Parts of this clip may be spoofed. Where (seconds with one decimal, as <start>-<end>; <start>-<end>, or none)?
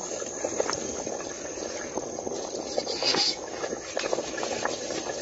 3.1-3.6